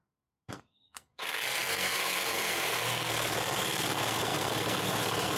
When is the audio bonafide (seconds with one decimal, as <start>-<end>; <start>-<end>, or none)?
none

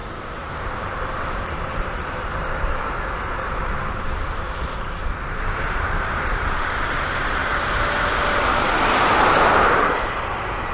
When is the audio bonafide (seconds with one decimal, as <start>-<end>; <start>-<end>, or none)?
2.3-3.9; 7.4-8.2